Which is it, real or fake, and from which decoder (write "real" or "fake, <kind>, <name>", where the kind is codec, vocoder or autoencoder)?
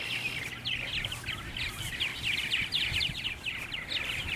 real